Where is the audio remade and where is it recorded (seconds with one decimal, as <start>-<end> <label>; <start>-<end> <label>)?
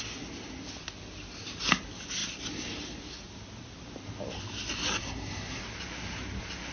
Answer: 0.0-5.0 recorded; 5.0-5.6 remade; 5.6-6.7 recorded